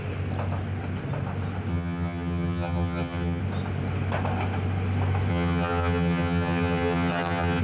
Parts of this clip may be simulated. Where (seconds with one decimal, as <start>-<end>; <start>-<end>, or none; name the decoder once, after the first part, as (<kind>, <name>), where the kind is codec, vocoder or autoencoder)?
1.7-3.4 (vocoder, HiFi-GAN); 5.3-7.6